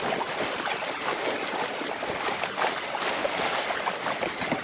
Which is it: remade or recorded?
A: recorded